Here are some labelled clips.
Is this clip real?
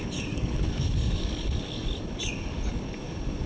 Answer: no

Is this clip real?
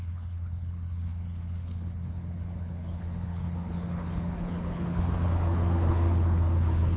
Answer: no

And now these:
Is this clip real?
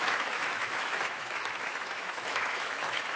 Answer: no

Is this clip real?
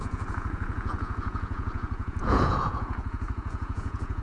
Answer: no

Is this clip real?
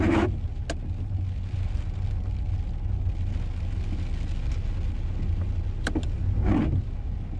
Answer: yes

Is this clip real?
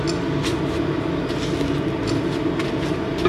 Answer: yes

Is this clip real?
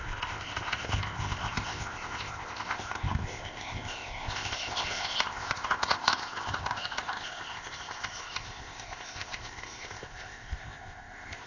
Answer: no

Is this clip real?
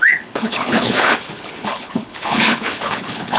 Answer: no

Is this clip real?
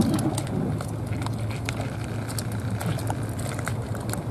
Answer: yes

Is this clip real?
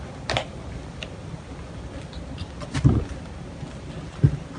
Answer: yes